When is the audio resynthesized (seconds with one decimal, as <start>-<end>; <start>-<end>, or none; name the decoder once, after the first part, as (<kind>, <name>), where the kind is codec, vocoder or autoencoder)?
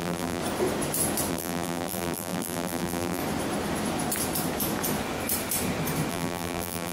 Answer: 0.0-0.4 (vocoder, BigVGAN v2); 1.3-3.2; 6.1-6.9